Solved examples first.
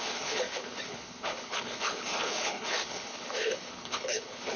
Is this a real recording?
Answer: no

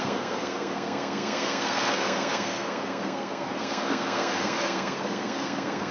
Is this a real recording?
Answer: no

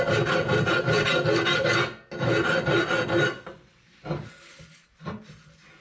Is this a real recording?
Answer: yes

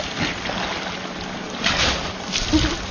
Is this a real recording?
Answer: yes